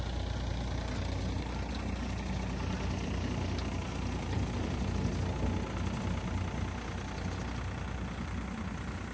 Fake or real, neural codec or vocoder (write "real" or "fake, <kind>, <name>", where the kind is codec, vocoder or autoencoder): real